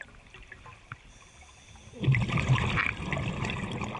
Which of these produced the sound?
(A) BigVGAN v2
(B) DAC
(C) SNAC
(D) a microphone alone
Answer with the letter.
D